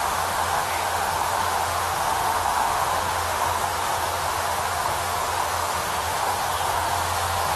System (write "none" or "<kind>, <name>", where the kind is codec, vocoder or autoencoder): autoencoder, DAC-VAE